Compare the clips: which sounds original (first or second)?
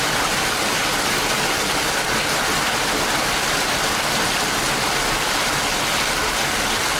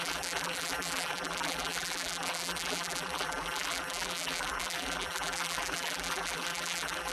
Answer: first